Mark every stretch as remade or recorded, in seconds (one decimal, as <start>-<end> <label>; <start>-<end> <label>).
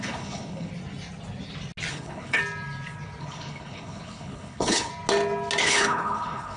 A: 0.0-0.7 remade; 0.7-1.9 recorded; 1.9-2.4 remade; 2.4-3.2 recorded; 3.2-4.9 remade; 4.9-5.6 recorded; 5.6-6.6 remade